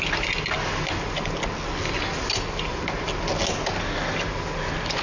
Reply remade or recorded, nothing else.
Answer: recorded